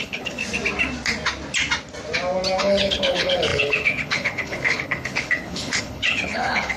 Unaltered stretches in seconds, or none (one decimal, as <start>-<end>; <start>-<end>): 0.4-2.6